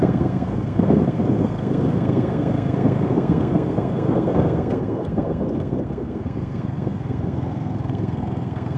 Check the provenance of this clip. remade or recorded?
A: remade